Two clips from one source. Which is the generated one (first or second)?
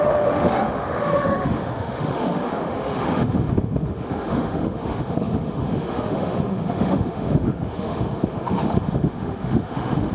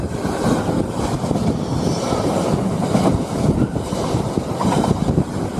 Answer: first